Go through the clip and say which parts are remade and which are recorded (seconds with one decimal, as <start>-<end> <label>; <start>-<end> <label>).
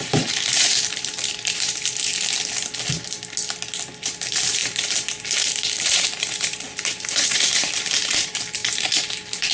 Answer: 0.0-2.1 remade; 2.1-4.0 recorded; 4.0-9.5 remade